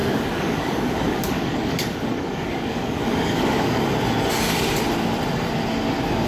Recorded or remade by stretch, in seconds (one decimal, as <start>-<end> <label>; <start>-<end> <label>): 0.0-3.8 remade; 3.8-6.3 recorded